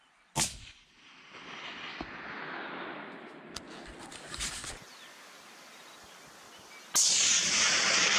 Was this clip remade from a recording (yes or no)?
no